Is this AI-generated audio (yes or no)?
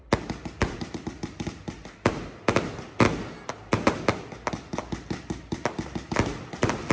no